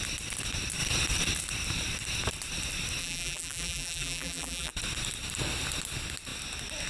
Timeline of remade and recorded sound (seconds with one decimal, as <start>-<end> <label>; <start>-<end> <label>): 0.0-3.0 recorded; 3.0-4.7 remade; 4.7-6.9 recorded